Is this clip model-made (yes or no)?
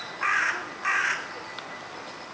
no